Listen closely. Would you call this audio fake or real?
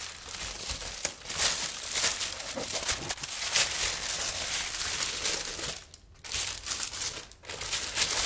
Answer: real